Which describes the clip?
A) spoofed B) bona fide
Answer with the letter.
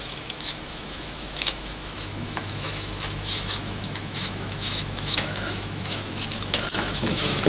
A